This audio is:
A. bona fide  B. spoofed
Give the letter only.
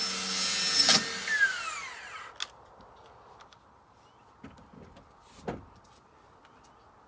A